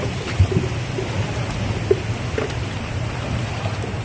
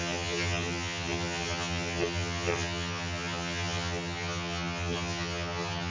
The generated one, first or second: second